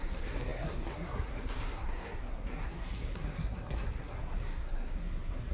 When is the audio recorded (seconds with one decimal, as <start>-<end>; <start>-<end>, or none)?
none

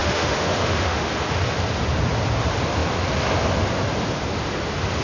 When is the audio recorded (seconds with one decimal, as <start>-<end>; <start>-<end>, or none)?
1.1-5.0

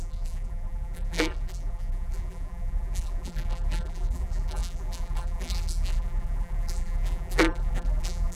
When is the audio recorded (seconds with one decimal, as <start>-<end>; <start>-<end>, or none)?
none